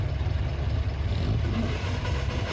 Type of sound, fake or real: real